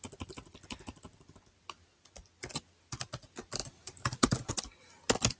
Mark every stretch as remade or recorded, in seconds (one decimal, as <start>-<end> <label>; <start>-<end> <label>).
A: 0.0-3.6 recorded; 3.6-4.5 remade; 4.5-5.4 recorded